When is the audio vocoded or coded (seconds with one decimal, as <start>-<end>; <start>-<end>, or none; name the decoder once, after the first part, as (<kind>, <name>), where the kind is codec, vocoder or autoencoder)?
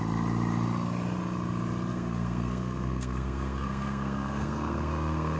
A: 1.9-5.4 (codec, SNAC)